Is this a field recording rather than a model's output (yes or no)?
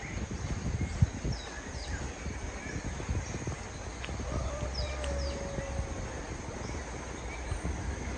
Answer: yes